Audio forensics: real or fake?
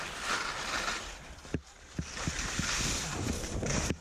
real